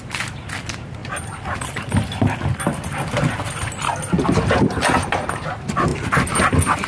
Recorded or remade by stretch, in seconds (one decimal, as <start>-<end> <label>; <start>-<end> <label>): 0.0-6.9 recorded

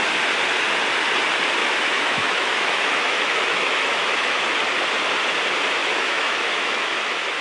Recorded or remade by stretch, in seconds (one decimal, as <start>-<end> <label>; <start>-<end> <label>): 0.0-1.6 recorded; 1.6-4.4 remade; 4.4-5.8 recorded; 5.8-7.4 remade

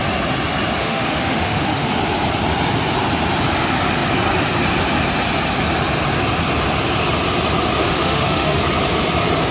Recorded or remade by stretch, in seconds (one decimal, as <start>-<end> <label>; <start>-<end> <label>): 0.0-0.8 recorded; 0.8-2.0 remade; 2.0-7.8 recorded; 7.8-8.6 remade; 8.6-9.5 recorded